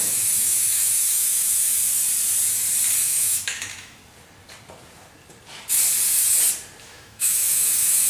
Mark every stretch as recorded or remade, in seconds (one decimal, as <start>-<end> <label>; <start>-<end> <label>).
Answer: 0.0-1.8 remade; 1.8-3.0 recorded; 3.0-4.0 remade; 4.0-6.8 recorded; 6.8-8.1 remade